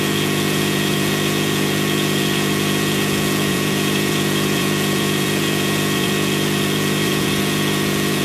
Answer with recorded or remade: remade